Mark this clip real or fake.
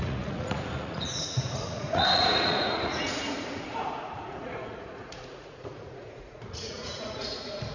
fake